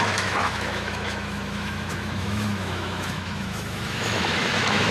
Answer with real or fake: fake